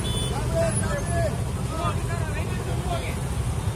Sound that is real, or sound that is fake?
real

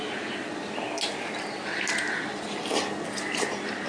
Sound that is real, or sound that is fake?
real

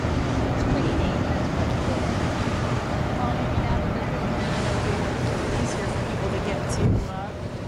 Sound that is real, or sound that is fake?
fake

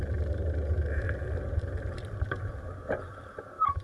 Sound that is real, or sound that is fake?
real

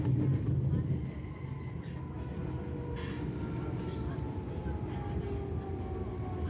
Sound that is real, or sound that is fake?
real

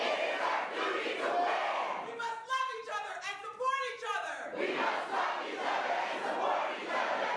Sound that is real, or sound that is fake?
fake